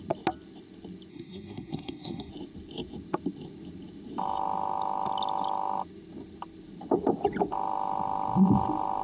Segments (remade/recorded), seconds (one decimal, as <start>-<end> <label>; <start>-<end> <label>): 0.0-1.1 recorded; 1.1-2.3 remade; 2.3-9.0 recorded